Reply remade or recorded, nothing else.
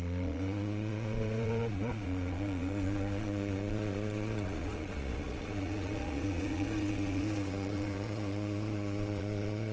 remade